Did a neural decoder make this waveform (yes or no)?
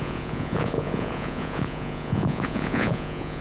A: yes